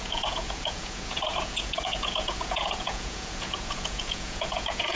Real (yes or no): no